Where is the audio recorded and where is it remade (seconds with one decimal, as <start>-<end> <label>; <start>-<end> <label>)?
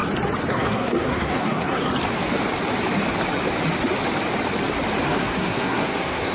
0.0-0.5 recorded; 0.5-1.9 remade; 1.9-5.1 recorded; 5.1-6.3 remade